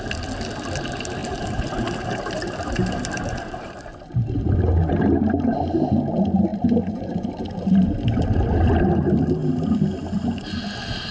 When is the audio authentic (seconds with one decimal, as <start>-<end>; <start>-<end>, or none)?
0.0-1.2; 4.5-6.5; 7.9-11.1